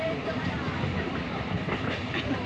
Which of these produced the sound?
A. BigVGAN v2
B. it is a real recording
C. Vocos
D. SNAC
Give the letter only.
B